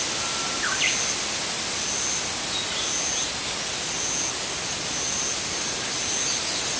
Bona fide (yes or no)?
yes